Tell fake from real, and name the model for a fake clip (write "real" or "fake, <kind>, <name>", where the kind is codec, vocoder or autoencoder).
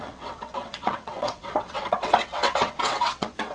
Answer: fake, vocoder, WaveNeXt